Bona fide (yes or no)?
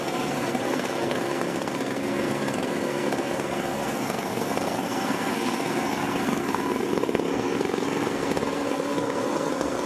no